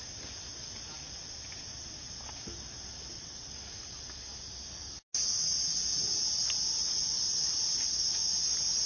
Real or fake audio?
real